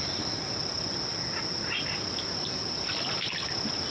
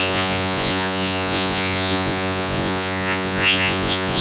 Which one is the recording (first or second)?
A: first